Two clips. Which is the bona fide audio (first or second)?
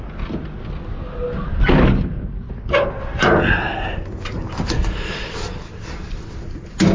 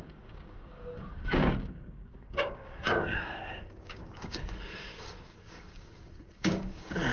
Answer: first